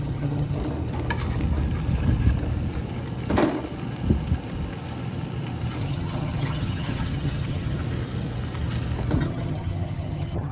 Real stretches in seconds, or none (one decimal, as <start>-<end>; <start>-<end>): 0.6-5.8; 7.8-9.2